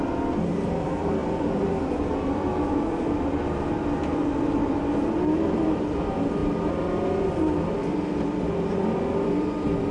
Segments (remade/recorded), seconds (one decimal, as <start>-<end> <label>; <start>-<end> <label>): 0.0-9.9 remade